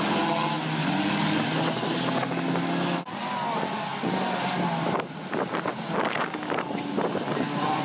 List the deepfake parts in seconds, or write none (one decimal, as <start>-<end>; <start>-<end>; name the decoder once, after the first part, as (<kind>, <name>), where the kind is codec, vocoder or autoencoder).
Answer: none